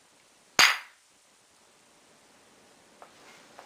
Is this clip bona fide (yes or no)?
yes